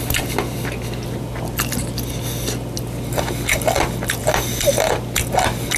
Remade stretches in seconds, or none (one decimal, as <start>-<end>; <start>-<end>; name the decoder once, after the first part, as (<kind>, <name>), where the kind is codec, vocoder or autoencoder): none